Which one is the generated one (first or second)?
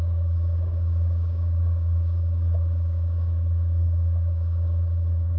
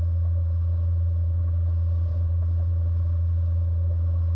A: first